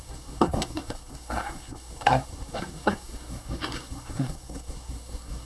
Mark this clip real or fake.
fake